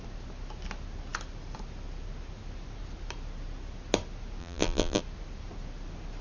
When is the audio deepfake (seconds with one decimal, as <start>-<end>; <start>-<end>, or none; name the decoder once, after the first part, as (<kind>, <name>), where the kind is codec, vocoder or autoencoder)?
4.4-5.0 (vocoder, BigVGAN v2)